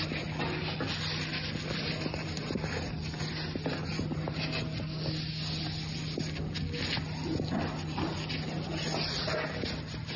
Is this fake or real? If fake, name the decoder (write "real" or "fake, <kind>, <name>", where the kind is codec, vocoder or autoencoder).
real